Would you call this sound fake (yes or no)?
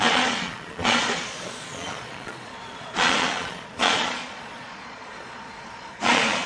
yes